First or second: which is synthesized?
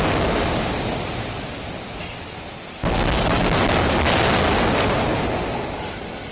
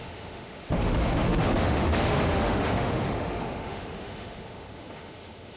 second